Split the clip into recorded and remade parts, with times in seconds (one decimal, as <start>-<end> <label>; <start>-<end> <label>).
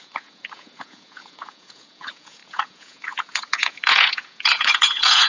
0.0-5.3 remade